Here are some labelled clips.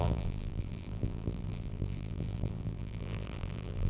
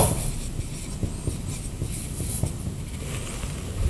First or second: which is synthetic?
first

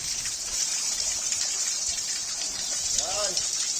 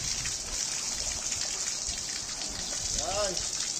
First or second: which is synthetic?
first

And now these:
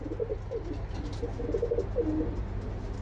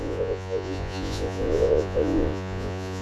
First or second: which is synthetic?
second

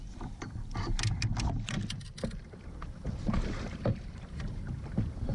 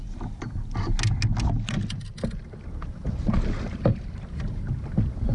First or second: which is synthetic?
first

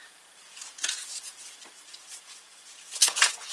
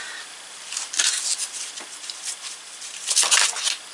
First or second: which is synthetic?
first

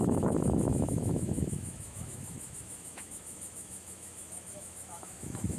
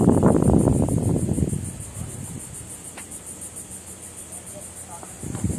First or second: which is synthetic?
first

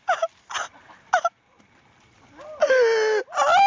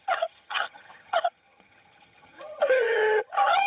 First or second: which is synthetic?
second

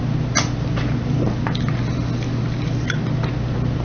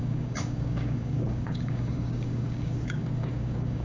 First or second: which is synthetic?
second